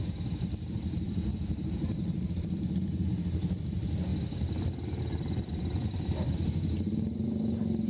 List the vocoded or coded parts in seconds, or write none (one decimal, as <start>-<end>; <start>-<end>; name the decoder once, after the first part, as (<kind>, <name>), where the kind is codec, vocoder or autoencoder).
0.0-4.1 (vocoder, BigVGAN v2); 5.0-7.9